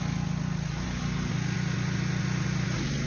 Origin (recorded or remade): recorded